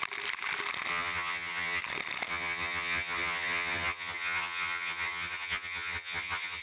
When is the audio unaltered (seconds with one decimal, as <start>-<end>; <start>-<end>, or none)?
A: 0.0-0.9; 1.8-2.3